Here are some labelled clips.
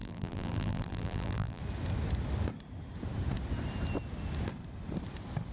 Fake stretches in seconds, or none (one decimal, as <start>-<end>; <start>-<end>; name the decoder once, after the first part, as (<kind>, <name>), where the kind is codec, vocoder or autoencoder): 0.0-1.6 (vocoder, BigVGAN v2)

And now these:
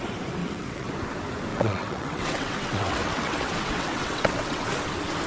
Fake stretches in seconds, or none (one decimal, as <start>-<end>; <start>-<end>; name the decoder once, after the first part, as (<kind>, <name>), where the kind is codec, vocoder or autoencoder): 0.4-0.9 (vocoder, WaveNeXt); 1.5-4.7

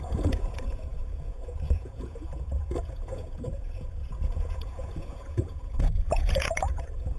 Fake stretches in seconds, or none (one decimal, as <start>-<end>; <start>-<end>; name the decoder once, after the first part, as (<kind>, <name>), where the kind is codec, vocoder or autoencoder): 0.0-7.2 (vocoder, Vocos)